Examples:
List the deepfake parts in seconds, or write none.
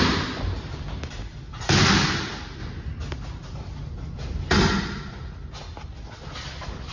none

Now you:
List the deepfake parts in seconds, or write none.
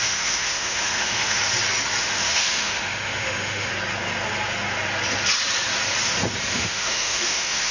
0.0-1.4 (autoencoder, DAC-VAE); 2.0-3.7; 6.5-7.7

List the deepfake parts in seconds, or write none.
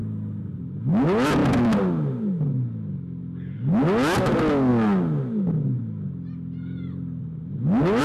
none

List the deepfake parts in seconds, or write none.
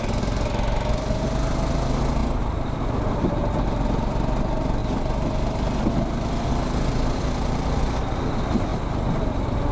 none